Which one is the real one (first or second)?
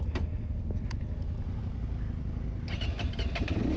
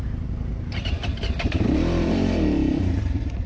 first